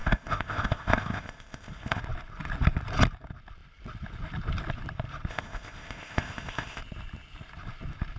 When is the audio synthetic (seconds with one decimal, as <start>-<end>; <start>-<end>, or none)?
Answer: 0.0-2.0; 5.3-6.8